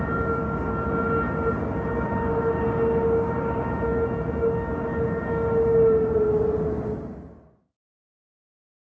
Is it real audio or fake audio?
real